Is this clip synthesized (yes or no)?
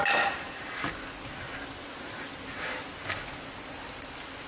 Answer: no